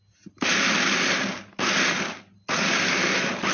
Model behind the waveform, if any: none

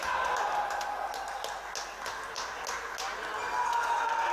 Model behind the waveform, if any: none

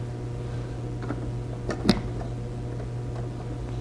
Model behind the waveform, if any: none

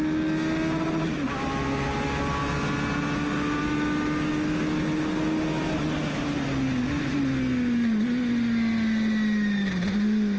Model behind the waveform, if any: none